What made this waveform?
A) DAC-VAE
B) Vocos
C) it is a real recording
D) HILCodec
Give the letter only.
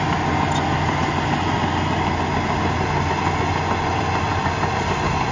C